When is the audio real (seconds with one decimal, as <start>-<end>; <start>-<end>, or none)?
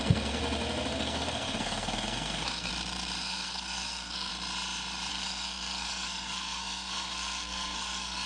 0.4-0.9; 2.7-3.2; 4.3-5.1